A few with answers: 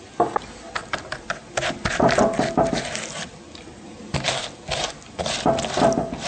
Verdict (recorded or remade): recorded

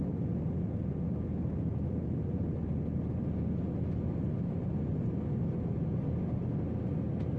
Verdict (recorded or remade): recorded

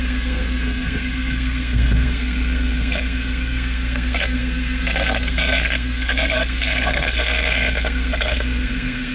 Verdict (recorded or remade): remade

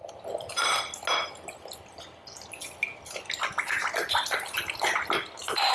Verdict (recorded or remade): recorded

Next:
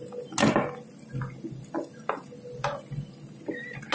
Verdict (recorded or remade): recorded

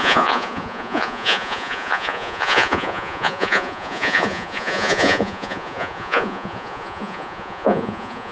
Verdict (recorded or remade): remade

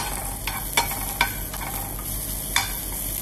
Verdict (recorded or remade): recorded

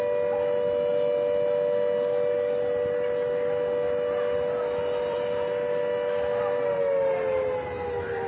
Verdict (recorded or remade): recorded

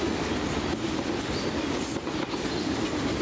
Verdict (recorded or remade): recorded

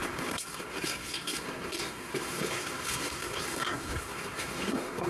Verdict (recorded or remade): remade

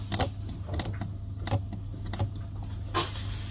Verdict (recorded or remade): recorded